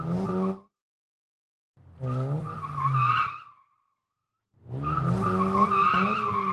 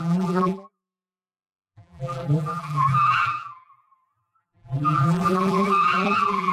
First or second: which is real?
first